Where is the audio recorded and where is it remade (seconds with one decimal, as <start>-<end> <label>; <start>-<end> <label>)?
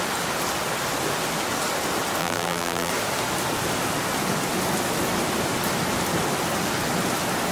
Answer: 0.0-2.2 recorded; 2.2-2.9 remade; 2.9-7.5 recorded